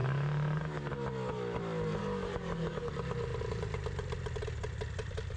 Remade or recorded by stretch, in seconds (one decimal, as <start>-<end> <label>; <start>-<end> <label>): 0.0-0.9 remade; 0.9-2.0 recorded; 2.0-2.9 remade; 2.9-5.4 recorded